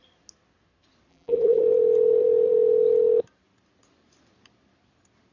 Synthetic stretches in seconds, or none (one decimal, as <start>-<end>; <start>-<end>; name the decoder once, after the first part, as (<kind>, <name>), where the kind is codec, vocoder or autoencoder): 1.1-1.6 (vocoder, BigVGAN v2)